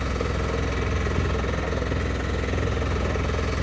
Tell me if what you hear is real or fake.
real